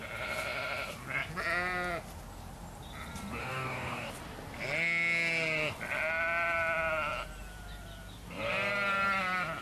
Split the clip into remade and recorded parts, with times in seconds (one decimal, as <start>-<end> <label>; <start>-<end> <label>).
0.0-3.4 recorded; 3.4-4.1 remade; 4.1-9.6 recorded